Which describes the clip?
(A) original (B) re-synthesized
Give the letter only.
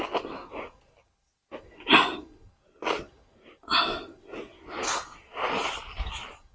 A